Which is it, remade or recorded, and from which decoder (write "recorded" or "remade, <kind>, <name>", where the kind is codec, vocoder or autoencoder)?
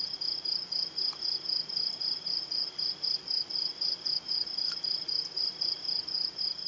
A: recorded